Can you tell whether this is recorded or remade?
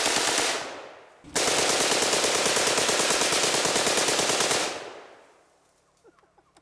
recorded